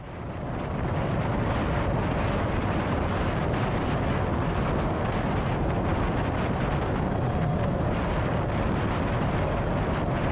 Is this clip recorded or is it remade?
recorded